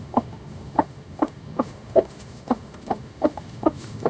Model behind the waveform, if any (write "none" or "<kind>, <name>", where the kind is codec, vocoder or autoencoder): autoencoder, DAC-VAE